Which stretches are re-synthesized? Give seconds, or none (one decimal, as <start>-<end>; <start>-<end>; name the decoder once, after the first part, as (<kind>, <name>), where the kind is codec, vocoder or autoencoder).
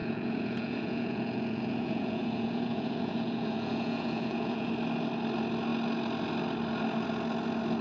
0.0-4.7 (vocoder, Vocos)